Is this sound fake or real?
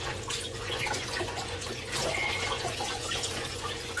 fake